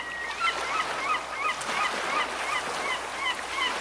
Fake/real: real